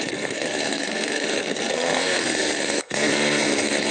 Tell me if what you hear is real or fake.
fake